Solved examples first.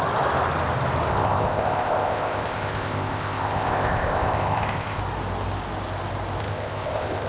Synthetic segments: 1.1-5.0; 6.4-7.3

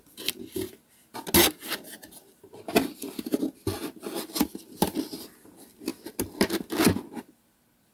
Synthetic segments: none

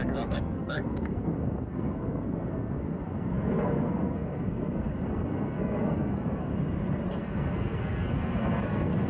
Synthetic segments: 0.0-6.5; 7.1-9.1

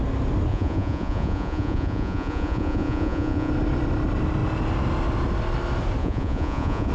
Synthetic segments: 0.5-3.5; 6.0-6.9

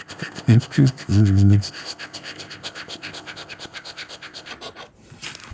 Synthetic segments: 0.0-4.5